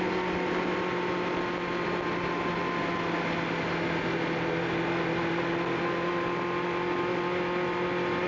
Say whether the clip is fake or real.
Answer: real